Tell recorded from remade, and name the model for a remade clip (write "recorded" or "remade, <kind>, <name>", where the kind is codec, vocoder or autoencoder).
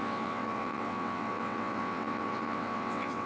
remade, vocoder, WaveNeXt